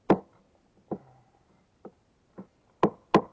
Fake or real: real